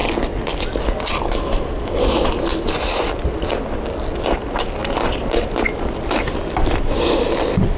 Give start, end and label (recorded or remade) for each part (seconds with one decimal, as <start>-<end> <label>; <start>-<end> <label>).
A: 0.0-4.8 recorded; 4.8-5.5 remade; 5.5-7.8 recorded